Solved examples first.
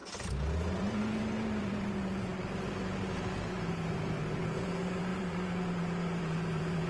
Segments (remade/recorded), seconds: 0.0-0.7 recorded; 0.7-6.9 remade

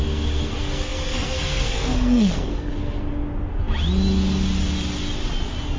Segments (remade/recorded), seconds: 0.0-3.1 remade; 3.1-5.8 recorded

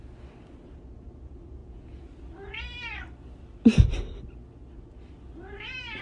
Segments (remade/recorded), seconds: 0.0-1.6 recorded; 1.6-2.1 remade; 2.1-6.0 recorded

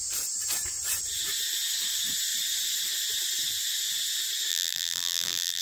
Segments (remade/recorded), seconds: 0.0-4.5 recorded; 4.5-5.6 remade